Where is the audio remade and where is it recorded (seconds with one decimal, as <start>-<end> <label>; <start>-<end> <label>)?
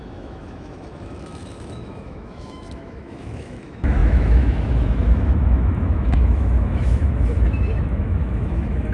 0.0-8.9 remade